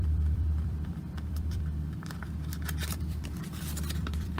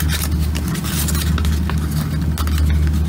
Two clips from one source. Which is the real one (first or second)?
second